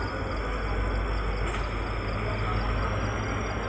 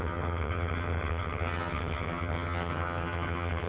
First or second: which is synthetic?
second